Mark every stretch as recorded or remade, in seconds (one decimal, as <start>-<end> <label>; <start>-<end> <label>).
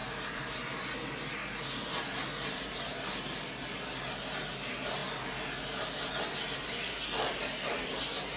0.0-8.4 recorded